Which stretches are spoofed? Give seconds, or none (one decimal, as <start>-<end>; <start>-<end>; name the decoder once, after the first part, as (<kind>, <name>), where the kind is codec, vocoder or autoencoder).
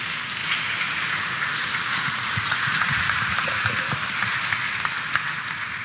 0.4-3.9 (vocoder, Vocos)